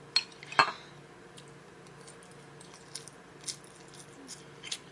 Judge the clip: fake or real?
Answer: real